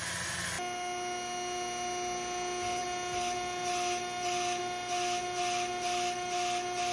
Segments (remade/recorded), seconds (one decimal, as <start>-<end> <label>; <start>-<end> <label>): 0.0-6.9 recorded